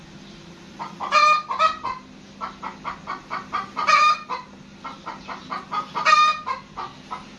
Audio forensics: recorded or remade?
recorded